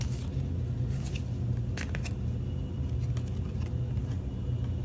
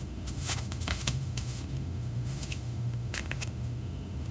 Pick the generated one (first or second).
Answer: second